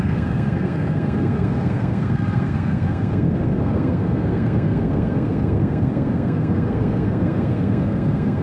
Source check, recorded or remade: remade